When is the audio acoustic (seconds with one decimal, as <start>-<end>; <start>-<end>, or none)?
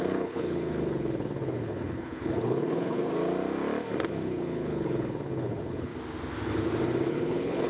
3.1-4.1; 5.9-7.1